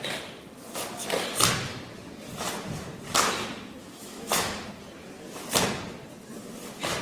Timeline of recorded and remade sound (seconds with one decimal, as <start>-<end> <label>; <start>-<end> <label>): 0.0-3.8 recorded; 3.8-4.7 remade; 4.7-7.0 recorded